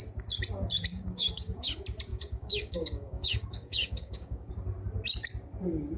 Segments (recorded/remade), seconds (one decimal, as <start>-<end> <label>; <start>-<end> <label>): 0.0-0.9 recorded; 0.9-1.7 remade; 1.7-2.1 recorded; 2.1-4.5 remade; 4.5-6.0 recorded